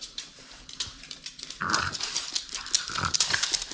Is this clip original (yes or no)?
no